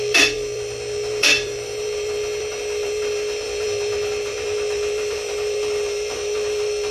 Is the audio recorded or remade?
remade